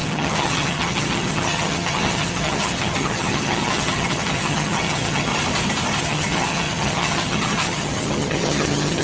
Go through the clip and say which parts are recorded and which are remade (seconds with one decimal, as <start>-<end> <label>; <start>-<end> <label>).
0.0-5.3 remade; 5.3-6.0 recorded; 6.0-9.0 remade

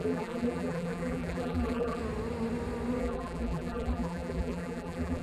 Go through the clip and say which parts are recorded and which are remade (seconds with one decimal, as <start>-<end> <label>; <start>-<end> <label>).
0.0-2.0 remade; 2.0-3.0 recorded; 3.0-5.2 remade

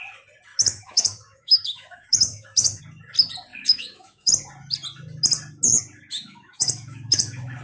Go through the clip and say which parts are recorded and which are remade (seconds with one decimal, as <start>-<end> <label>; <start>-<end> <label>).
0.0-0.5 recorded; 0.5-2.8 remade; 2.8-3.5 recorded; 3.5-4.3 remade; 4.3-6.1 recorded; 6.1-7.6 remade

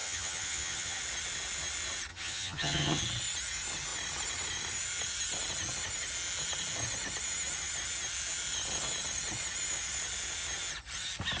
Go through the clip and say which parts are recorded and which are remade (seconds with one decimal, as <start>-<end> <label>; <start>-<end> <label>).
0.0-1.0 remade; 1.0-2.1 recorded; 2.1-3.0 remade; 3.0-11.4 recorded